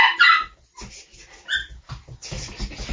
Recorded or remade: recorded